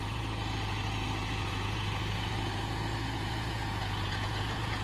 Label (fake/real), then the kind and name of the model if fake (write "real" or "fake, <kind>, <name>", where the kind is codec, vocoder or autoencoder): fake, vocoder, Vocos